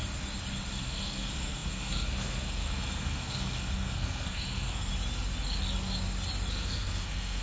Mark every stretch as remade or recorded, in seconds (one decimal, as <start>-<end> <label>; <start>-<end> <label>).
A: 0.0-0.7 recorded; 0.7-4.9 remade; 4.9-6.5 recorded; 6.5-7.4 remade